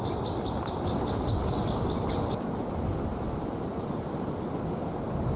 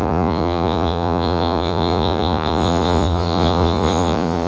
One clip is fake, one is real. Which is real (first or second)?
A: first